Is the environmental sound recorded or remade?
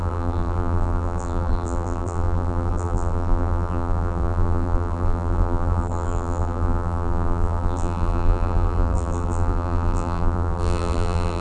remade